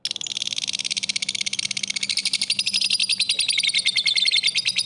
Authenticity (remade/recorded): recorded